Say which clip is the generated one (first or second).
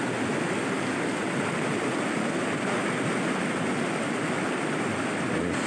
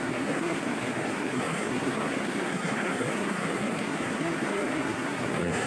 second